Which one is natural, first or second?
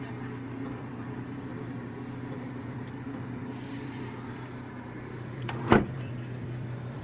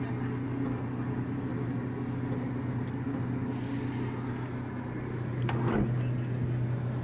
second